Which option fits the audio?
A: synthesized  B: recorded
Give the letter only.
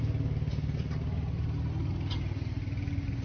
B